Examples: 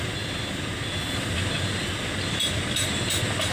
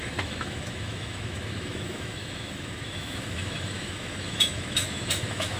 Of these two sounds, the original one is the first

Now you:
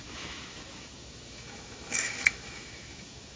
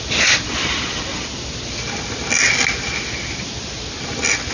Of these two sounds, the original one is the second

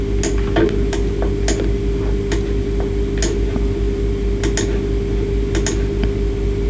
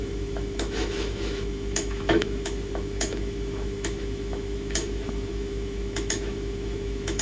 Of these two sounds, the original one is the first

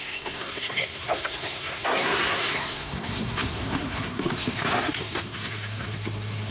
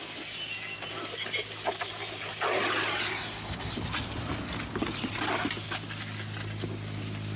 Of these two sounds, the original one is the second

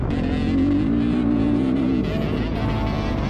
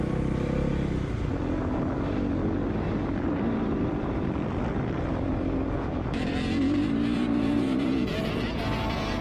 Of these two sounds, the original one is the first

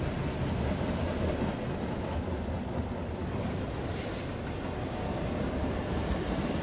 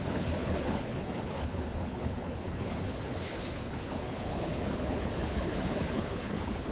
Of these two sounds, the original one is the first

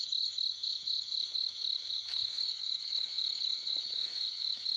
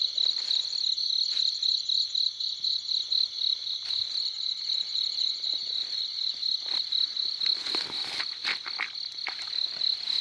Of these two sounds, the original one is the second